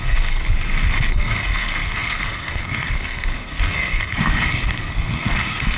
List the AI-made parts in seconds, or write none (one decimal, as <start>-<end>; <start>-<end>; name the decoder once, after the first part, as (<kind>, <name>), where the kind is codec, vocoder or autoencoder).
0.0-0.4 (codec, SNAC); 1.1-5.8